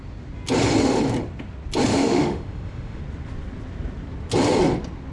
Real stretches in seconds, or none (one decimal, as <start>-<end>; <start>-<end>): 0.0-1.9; 3.0-5.1